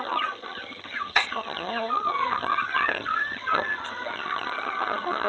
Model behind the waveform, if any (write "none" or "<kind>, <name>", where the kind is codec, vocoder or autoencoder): vocoder, HiFi-GAN